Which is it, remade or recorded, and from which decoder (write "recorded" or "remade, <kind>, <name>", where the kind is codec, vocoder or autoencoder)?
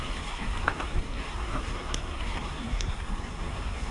remade, codec, SNAC